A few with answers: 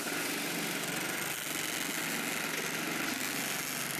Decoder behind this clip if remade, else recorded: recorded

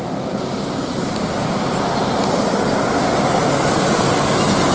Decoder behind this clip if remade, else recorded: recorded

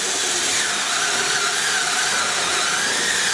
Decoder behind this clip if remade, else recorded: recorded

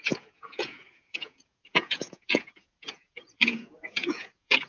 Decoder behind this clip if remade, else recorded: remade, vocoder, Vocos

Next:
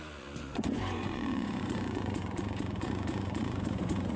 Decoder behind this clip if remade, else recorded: remade, vocoder, Vocos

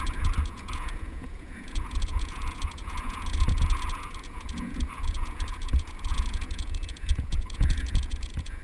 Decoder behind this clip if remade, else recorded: remade, vocoder, Vocos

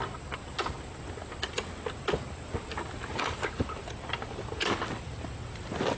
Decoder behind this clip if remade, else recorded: recorded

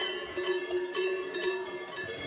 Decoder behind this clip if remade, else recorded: remade, vocoder, Vocos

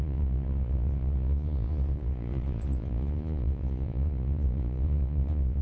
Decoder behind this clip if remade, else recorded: remade, vocoder, Vocos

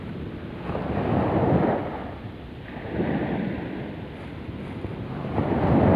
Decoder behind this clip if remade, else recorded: recorded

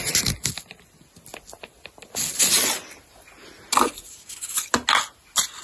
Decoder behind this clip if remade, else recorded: recorded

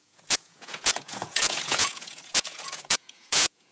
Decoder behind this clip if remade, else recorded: remade, vocoder, Vocos